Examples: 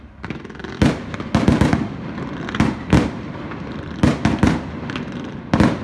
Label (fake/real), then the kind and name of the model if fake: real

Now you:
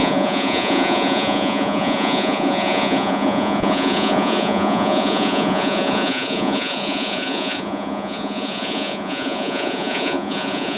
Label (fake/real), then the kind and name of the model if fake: fake, vocoder, Vocos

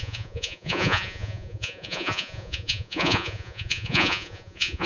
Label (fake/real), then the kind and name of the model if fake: fake, vocoder, Vocos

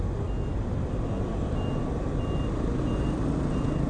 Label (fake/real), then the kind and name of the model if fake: real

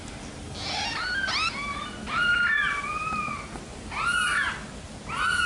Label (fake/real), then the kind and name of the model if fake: real